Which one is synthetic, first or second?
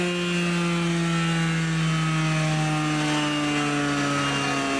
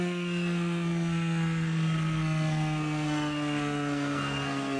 second